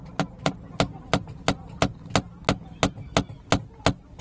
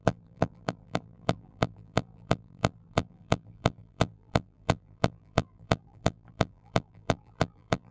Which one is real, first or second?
first